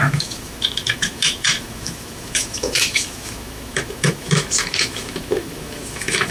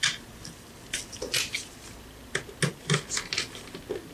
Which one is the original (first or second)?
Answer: second